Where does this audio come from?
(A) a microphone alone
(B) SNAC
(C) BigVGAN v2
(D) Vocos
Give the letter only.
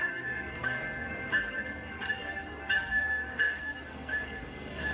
B